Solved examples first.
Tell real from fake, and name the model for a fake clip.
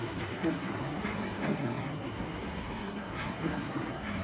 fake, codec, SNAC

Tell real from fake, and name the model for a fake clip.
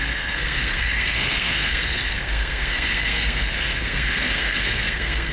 fake, codec, SNAC